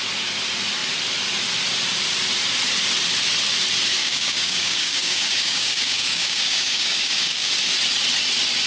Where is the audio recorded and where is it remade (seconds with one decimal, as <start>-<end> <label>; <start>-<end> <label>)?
0.0-4.0 recorded; 4.0-7.5 remade; 7.5-8.7 recorded